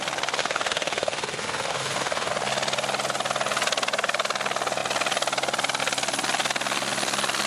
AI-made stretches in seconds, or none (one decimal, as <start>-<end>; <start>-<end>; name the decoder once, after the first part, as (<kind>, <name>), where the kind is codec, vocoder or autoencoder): 0.4-2.3 (autoencoder, DAC-VAE)